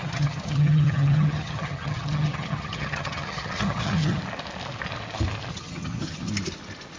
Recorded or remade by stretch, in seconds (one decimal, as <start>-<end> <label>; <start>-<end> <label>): 0.0-4.2 remade; 4.2-5.5 recorded; 5.5-6.3 remade; 6.3-7.0 recorded